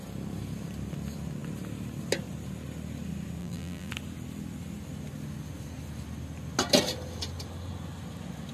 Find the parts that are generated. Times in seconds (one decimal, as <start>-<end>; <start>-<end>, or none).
3.4-3.9